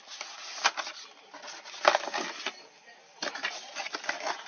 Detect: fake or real real